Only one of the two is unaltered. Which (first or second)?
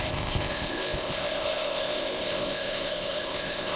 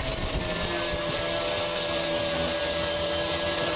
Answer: second